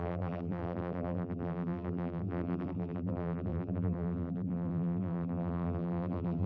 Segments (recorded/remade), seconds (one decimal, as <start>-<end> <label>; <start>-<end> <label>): 0.0-6.5 remade